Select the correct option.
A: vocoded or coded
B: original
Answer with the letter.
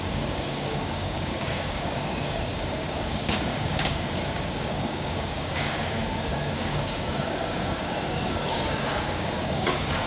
A